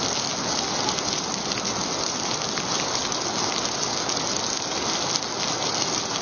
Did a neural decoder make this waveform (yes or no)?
no